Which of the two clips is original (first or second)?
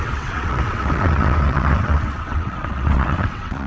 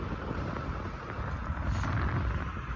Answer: second